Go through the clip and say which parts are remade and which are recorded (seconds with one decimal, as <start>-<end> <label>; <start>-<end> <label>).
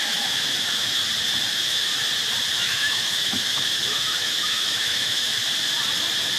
0.0-1.0 remade; 1.0-1.5 recorded; 1.5-1.9 remade; 1.9-2.5 recorded; 2.5-5.4 remade; 5.4-6.4 recorded